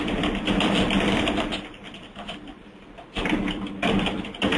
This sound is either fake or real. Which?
fake